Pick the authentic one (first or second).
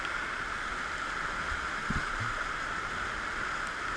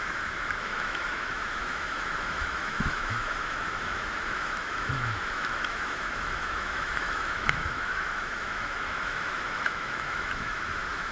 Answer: first